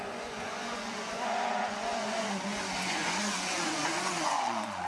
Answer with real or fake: fake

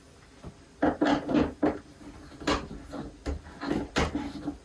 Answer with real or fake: real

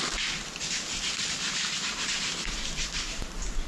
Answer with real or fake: fake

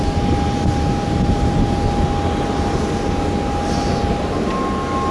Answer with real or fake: real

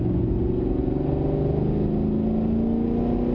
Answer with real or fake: real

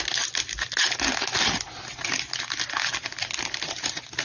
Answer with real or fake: real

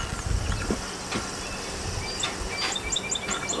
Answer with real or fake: real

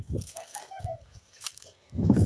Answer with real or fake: fake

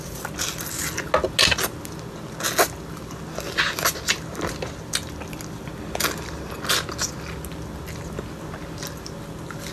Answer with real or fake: real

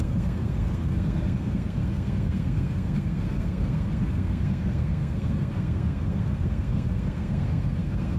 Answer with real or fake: fake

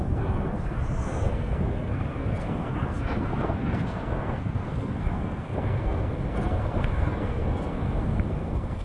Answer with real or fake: fake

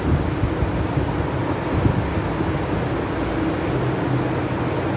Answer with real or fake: real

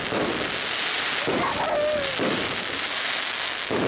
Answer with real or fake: real